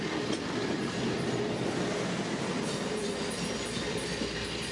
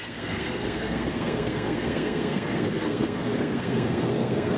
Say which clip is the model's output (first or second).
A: second